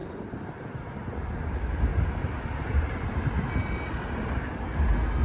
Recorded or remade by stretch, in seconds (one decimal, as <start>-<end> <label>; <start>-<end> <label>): 0.0-0.9 remade; 0.9-5.2 recorded